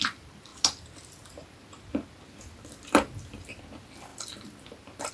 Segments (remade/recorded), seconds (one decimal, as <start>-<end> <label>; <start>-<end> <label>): 0.0-5.1 recorded

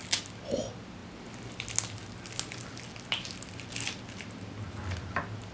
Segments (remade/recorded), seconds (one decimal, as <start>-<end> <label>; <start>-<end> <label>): 0.0-5.5 recorded

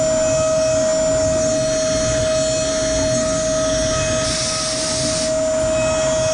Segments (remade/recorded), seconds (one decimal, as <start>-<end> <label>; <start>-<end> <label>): 0.0-6.3 recorded

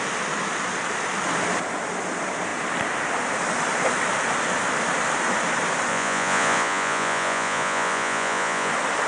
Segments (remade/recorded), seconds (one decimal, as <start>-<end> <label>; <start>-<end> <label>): 0.0-5.9 recorded; 5.9-8.7 remade; 8.7-9.1 recorded

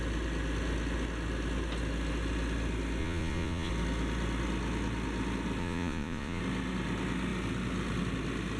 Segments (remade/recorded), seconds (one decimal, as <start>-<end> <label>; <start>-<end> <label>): 0.0-3.0 recorded; 3.0-3.7 remade; 3.7-5.6 recorded; 5.6-6.4 remade; 6.4-8.6 recorded

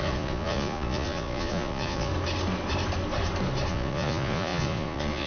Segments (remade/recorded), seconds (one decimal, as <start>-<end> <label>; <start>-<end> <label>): 0.0-2.1 remade; 2.1-3.7 recorded; 3.7-5.3 remade